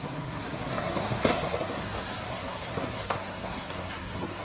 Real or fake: fake